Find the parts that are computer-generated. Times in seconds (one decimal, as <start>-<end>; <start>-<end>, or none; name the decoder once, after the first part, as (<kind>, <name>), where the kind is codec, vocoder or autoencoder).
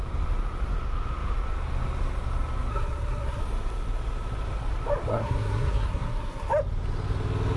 2.7-3.4 (codec, SNAC); 5.1-6.5